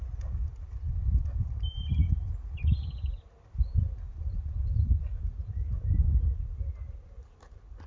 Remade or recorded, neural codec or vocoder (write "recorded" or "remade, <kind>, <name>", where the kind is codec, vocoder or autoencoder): recorded